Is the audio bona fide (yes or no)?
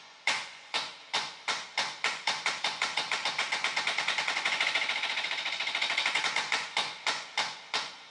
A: no